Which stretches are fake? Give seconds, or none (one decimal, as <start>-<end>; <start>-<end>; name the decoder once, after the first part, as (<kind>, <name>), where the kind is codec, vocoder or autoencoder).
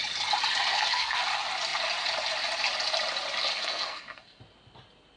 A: 0.7-1.2 (codec, SNAC); 3.5-4.4